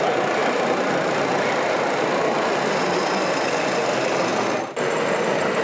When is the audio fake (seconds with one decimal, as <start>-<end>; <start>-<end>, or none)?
none